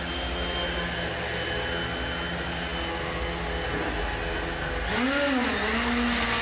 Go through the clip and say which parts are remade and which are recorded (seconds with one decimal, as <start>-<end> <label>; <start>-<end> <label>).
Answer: 0.0-6.4 recorded